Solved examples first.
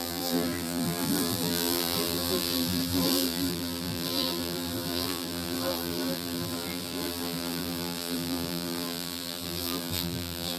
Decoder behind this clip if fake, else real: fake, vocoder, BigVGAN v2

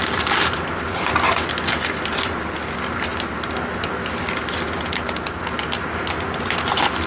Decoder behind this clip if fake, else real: real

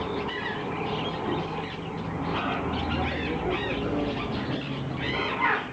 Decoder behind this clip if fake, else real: real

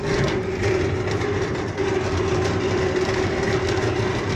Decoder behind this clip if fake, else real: fake, vocoder, BigVGAN v2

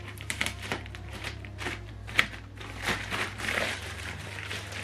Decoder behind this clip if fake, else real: fake, vocoder, BigVGAN v2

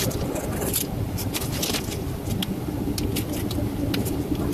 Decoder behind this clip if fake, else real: fake, vocoder, BigVGAN v2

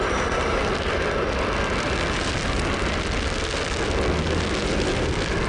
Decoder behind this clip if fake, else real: real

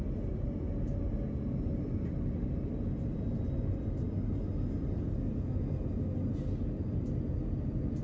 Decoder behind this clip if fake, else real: real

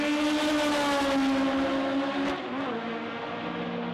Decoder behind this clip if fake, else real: real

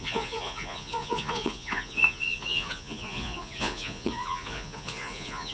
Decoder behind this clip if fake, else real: fake, vocoder, Vocos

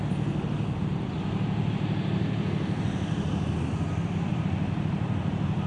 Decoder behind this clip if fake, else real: real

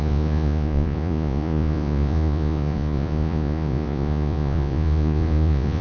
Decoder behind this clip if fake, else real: fake, vocoder, Vocos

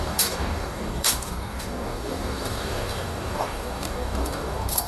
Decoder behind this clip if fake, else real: fake, codec, DAC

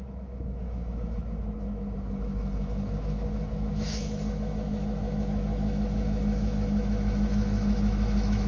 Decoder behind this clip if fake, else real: fake, autoencoder, DAC-VAE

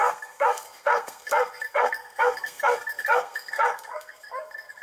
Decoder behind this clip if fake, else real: fake, codec, SNAC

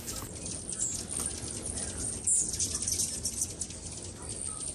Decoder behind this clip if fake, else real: real